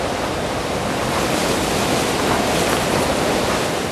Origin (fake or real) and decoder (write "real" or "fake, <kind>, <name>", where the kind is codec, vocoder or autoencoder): real